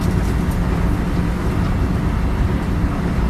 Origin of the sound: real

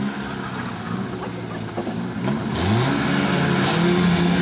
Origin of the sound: real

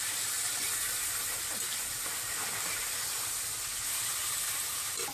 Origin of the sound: real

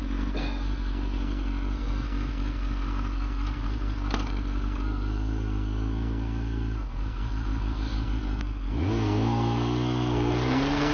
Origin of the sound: fake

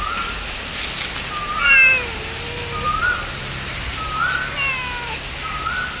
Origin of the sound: real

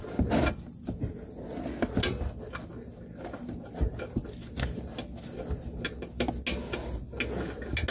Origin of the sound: real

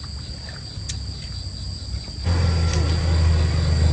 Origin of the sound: real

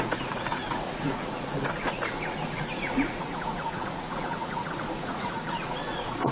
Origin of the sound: fake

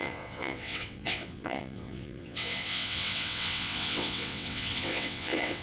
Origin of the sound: fake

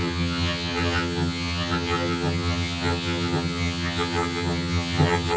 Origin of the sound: fake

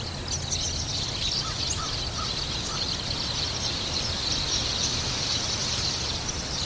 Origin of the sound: real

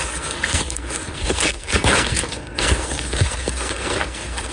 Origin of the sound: fake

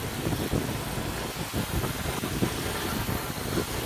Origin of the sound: real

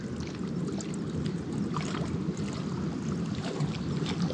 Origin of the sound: real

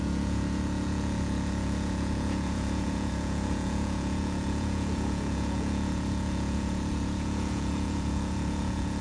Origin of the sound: fake